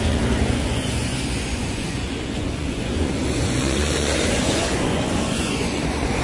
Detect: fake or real fake